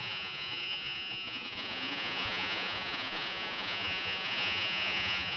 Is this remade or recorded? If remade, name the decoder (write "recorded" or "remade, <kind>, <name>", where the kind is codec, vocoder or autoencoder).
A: remade, vocoder, Vocos